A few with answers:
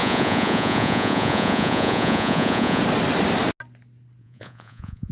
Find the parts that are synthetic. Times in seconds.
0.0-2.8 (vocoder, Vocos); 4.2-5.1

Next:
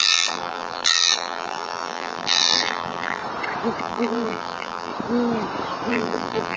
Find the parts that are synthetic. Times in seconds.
0.0-3.2 (vocoder, BigVGAN v2); 3.8-4.9; 5.9-6.6

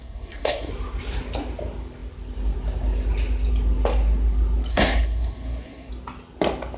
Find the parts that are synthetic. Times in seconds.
0.0-0.7 (codec, SNAC); 4.7-5.9

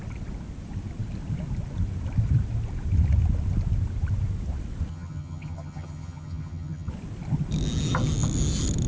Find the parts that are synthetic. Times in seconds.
4.9-6.9 (vocoder, HiFi-GAN)

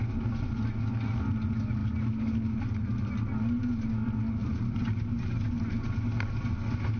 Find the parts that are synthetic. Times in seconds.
none

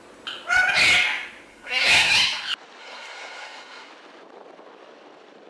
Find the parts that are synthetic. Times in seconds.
1.5-2.1 (codec, SNAC); 2.8-3.9

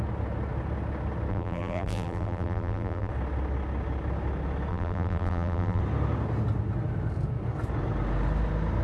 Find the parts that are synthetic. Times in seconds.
1.3-3.1 (vocoder, BigVGAN v2); 4.7-5.8